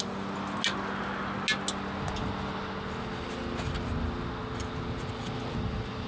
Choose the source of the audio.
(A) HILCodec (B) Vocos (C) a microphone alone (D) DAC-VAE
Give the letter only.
C